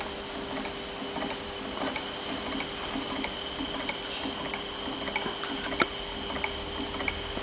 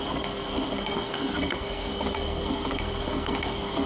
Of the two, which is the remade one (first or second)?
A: second